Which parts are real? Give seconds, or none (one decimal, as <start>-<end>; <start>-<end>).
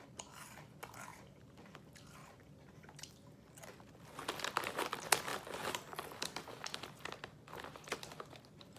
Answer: 0.0-1.1; 1.7-2.2; 3.1-8.8